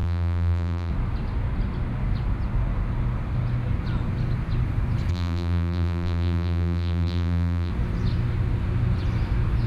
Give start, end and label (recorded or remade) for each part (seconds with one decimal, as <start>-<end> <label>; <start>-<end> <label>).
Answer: 0.0-0.9 remade; 0.9-5.1 recorded; 5.1-7.7 remade; 7.7-9.7 recorded